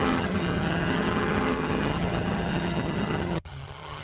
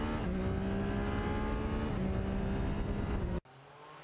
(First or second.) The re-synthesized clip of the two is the first